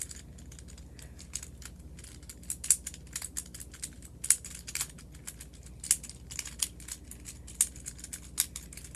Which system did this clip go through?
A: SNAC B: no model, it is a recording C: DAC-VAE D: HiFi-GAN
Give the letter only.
B